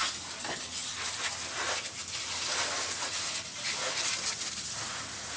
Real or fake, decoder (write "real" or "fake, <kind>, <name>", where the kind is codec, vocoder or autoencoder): real